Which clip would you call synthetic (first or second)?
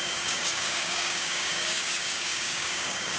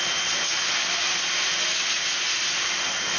first